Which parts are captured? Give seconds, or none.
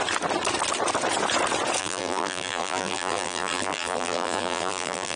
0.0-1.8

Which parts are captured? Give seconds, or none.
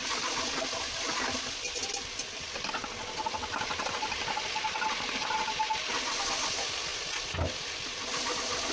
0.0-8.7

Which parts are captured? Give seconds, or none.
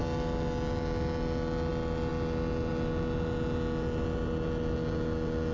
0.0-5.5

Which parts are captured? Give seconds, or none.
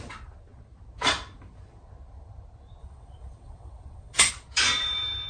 0.0-2.8; 4.3-5.3